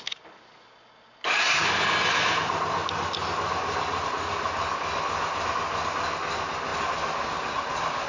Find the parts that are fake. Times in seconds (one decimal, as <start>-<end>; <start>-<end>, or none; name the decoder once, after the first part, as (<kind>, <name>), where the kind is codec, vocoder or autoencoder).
none

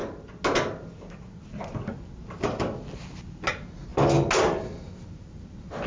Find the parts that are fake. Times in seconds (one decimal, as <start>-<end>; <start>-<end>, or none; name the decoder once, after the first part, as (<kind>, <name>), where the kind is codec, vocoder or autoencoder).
none

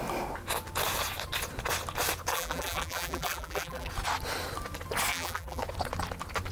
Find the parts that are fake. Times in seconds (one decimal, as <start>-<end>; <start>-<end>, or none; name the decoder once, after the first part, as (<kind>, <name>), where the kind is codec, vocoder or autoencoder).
2.3-3.9 (vocoder, BigVGAN v2); 5.1-5.6

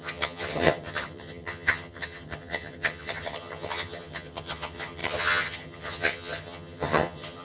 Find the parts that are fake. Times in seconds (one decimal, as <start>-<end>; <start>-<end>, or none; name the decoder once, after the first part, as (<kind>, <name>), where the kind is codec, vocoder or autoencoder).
0.0-7.4 (vocoder, HiFi-GAN)

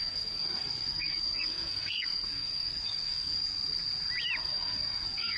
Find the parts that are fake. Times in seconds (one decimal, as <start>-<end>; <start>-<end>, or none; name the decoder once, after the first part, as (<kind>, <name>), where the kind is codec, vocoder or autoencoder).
0.0-3.4 (codec, SNAC); 4.4-5.4

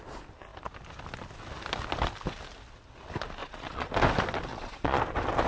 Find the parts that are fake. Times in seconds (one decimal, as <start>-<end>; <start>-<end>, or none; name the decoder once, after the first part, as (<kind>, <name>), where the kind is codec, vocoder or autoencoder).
3.4-3.9 (vocoder, Vocos); 4.5-5.0

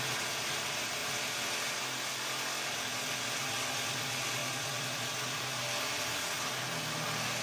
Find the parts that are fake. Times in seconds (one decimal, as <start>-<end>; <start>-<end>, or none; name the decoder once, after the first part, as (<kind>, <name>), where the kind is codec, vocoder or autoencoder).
1.0-1.8 (vocoder, BigVGAN v2); 4.4-5.4